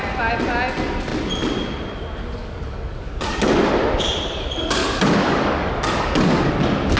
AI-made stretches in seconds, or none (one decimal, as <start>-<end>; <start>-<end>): 2.4-3.7; 4.8-6.5